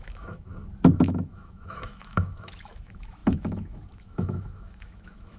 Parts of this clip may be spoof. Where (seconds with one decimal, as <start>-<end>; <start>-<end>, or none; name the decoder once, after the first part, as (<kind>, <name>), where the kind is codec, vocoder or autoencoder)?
0.0-0.5 (autoencoder, DAC-VAE); 1.0-5.4